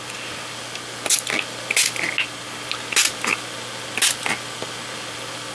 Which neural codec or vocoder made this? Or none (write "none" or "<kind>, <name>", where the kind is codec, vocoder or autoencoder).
none